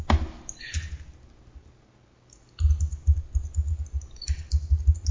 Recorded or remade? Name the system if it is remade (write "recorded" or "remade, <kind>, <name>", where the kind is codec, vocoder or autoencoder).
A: recorded